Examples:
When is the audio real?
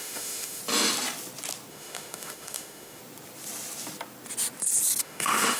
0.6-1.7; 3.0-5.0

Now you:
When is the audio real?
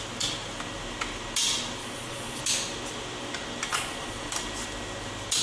0.0-1.8; 2.4-3.7; 4.3-5.4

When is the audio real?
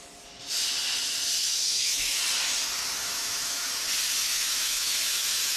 0.0-1.4; 2.2-3.0; 3.7-4.2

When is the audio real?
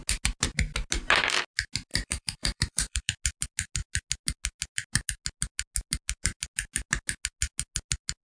0.0-1.9; 3.1-8.2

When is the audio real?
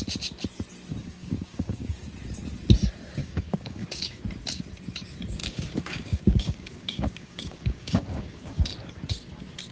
0.0-1.0; 2.1-3.2; 4.2-5.4; 8.6-9.7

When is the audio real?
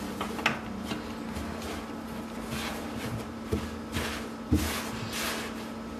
0.0-2.7; 3.6-6.0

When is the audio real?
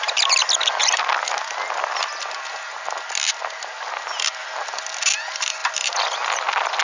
0.0-6.8